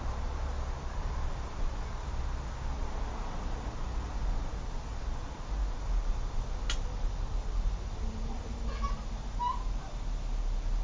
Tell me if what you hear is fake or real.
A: real